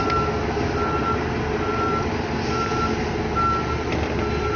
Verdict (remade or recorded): recorded